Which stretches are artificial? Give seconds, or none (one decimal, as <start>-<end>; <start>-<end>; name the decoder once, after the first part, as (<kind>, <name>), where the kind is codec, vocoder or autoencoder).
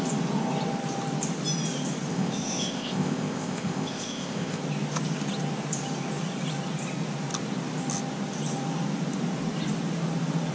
2.1-4.6 (codec, ZipCodec)